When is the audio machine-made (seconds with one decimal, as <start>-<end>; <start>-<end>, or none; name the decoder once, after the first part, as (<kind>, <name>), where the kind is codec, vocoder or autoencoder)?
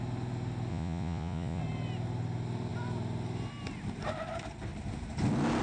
0.7-1.6 (vocoder, Vocos)